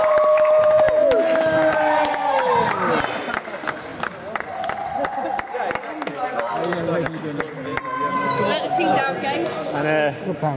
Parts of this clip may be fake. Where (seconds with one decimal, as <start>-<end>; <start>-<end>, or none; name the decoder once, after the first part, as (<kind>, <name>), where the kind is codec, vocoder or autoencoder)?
none